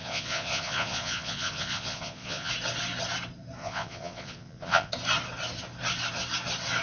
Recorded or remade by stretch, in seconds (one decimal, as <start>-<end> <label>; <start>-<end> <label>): 0.0-2.5 remade; 2.5-3.6 recorded; 3.6-4.9 remade; 4.9-6.8 recorded